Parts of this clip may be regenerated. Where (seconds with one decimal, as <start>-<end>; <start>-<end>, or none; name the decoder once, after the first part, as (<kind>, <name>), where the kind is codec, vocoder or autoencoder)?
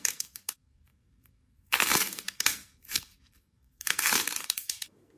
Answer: 0.0-5.2 (codec, SNAC)